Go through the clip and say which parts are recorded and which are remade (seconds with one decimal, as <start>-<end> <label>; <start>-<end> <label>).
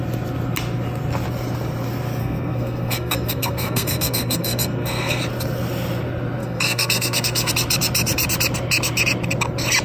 0.0-2.2 recorded; 2.2-5.2 remade; 5.2-6.4 recorded; 6.4-7.5 remade; 7.5-9.8 recorded